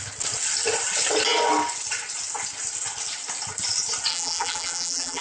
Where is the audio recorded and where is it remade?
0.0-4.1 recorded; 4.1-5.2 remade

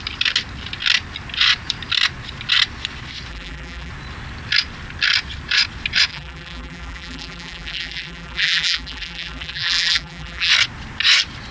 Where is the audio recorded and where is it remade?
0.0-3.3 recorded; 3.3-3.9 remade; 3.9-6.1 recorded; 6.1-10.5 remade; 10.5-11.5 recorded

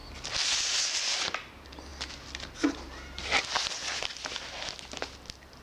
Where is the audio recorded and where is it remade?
0.0-1.9 recorded; 1.9-4.3 remade; 4.3-5.6 recorded

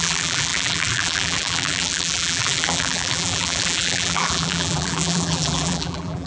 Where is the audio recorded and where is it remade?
0.0-6.3 remade